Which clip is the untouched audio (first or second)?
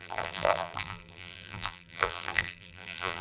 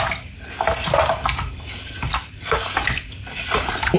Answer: second